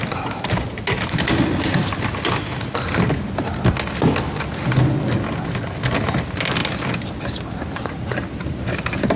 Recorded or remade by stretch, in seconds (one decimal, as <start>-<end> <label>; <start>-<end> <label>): 0.0-9.2 recorded